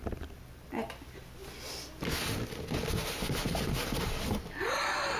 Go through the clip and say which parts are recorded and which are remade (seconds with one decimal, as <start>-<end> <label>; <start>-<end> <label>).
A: 0.0-5.2 recorded